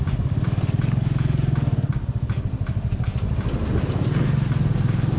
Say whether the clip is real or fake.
real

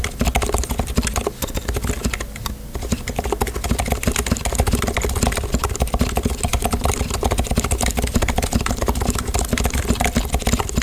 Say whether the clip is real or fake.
real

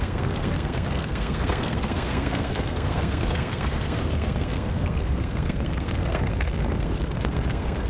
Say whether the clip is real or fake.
fake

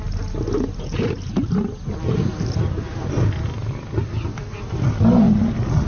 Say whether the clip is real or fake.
real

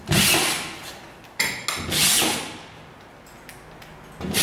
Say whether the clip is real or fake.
real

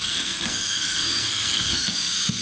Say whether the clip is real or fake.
fake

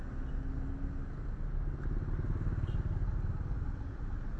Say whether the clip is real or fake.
real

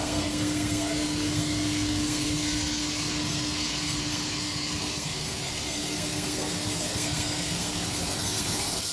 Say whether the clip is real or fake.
fake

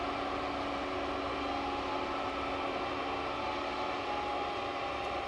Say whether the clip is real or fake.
real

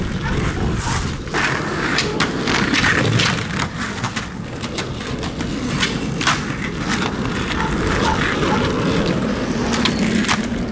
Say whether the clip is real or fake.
real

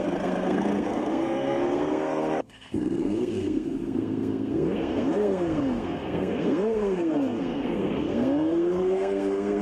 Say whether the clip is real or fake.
fake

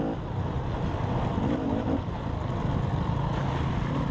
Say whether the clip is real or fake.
real